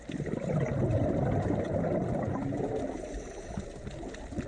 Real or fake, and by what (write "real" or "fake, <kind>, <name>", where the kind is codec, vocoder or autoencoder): real